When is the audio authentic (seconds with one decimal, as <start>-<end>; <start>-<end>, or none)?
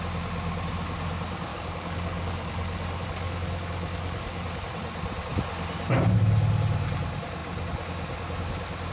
0.0-1.5; 4.6-8.9